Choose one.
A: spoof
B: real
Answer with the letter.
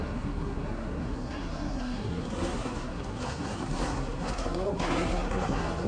A